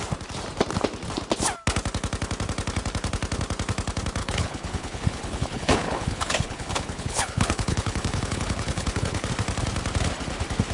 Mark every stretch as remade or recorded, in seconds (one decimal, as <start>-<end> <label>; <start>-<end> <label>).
0.0-4.2 recorded; 4.2-9.3 remade; 9.3-10.7 recorded